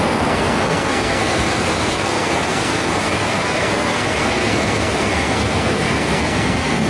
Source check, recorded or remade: remade